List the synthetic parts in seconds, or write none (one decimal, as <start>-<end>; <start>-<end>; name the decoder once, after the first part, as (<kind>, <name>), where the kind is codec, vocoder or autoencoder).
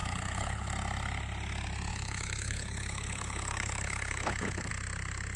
0.0-0.7 (codec, HILCodec); 1.9-4.7